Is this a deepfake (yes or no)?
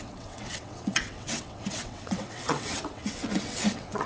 yes